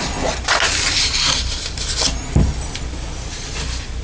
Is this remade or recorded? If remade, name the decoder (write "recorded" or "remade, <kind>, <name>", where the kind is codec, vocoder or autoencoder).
recorded